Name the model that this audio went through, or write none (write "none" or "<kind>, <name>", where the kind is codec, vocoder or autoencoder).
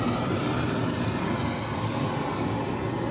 none